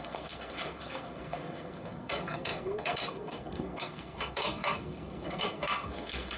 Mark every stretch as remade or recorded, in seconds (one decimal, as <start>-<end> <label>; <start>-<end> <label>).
0.0-6.4 remade